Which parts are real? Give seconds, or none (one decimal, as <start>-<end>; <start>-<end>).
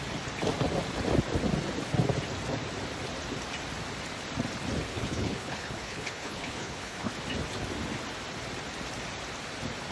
0.0-4.9; 7.1-9.9